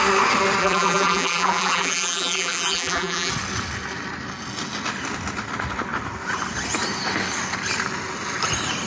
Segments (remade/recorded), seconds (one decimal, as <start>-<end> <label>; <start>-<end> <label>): 0.0-0.6 recorded; 0.6-3.3 remade; 3.3-8.9 recorded